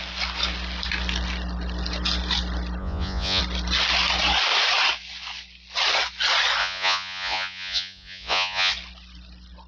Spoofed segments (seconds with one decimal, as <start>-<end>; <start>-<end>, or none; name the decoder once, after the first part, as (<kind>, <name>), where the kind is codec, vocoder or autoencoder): 2.8-3.4 (vocoder, Vocos); 6.6-8.7

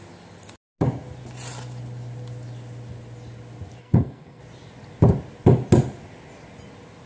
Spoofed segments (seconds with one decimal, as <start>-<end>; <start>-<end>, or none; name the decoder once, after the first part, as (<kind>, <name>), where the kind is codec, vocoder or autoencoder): 3.8-4.4 (codec, SNAC)

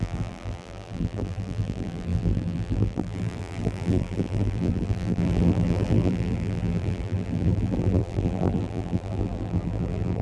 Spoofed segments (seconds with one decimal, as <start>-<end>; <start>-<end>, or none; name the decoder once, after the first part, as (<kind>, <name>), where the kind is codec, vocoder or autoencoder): 0.0-10.2 (vocoder, BigVGAN v2)

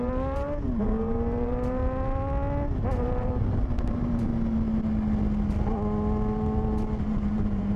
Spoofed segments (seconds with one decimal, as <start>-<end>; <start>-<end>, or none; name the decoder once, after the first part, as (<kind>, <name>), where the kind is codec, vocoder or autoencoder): 0.0-1.8 (vocoder, BigVGAN v2); 2.8-4.3; 7.0-7.8

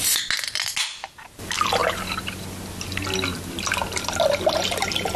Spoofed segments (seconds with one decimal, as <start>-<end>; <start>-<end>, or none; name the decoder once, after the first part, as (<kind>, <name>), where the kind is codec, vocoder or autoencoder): none

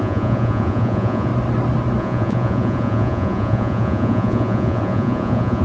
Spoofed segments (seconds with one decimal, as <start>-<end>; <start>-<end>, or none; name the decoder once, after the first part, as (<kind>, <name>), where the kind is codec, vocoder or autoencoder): 0.0-1.3 (vocoder, Vocos); 2.0-5.6